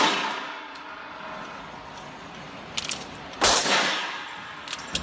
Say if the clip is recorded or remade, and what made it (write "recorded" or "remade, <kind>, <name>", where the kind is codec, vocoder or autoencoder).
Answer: recorded